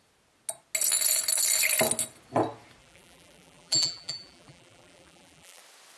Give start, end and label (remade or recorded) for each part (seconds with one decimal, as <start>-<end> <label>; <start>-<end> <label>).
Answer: 0.0-2.8 recorded; 2.8-5.6 remade; 5.6-6.0 recorded